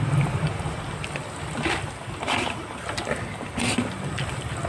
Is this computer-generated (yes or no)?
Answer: yes